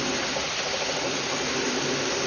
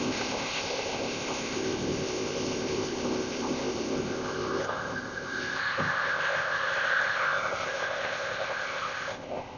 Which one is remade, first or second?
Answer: second